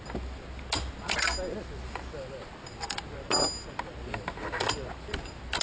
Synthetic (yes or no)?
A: no